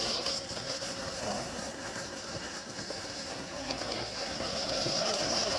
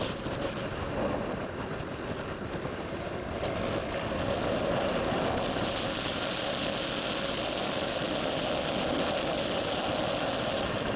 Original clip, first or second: second